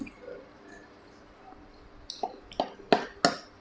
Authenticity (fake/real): real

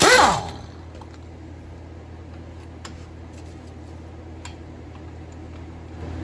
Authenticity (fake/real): real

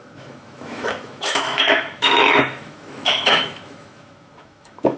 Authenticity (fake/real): fake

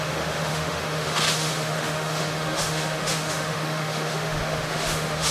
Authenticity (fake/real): fake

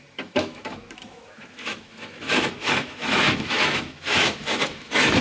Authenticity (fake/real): fake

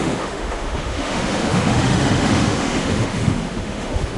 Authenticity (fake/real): fake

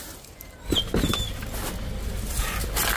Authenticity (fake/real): real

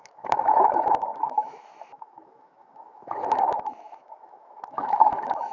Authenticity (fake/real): fake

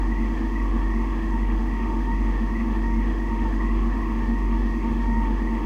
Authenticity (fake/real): fake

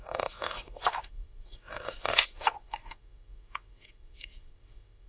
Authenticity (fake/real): fake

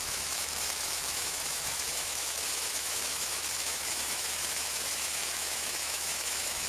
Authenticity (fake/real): fake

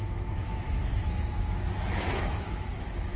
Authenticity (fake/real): fake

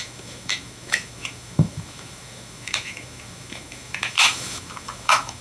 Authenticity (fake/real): fake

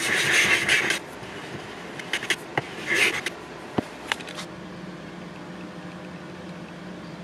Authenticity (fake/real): real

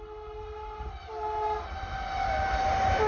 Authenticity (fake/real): real